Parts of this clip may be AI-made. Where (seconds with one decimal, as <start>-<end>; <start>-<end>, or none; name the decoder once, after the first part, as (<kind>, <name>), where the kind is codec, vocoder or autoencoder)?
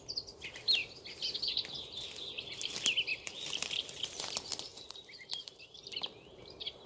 3.1-4.2 (vocoder, BigVGAN v2); 4.7-6.4